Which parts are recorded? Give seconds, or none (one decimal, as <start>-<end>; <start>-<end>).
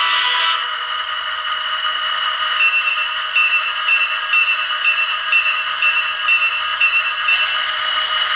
0.0-3.4; 4.0-4.4; 6.0-6.7; 7.4-8.4